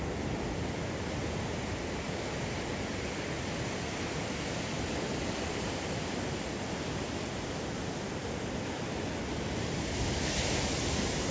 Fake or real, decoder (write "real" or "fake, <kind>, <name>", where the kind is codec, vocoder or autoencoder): real